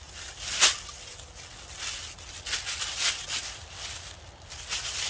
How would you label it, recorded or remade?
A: recorded